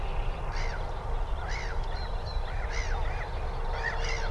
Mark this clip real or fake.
real